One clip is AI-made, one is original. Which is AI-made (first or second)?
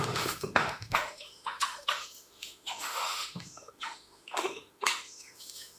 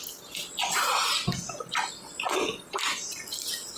first